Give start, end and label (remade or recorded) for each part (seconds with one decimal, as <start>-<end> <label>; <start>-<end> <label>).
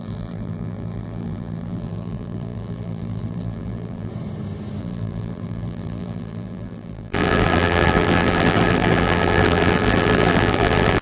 0.0-4.1 remade; 4.1-4.8 recorded; 4.8-11.0 remade